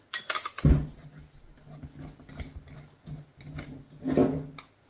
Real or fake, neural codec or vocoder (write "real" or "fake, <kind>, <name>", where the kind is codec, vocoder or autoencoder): real